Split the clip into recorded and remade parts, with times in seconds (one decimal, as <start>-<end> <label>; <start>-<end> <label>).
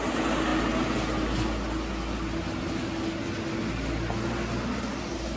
0.0-5.4 recorded